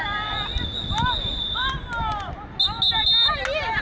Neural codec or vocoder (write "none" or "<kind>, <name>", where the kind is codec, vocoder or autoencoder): none